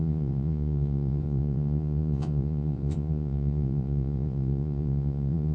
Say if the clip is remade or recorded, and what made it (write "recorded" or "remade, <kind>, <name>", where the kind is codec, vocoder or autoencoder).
remade, vocoder, Vocos